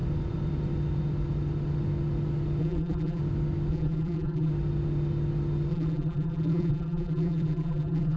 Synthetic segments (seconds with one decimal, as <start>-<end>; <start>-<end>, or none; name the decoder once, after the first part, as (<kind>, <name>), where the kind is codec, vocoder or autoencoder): 2.6-3.2 (vocoder, BigVGAN v2); 3.7-4.5; 5.7-8.2